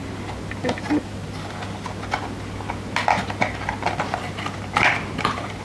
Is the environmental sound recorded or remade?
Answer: recorded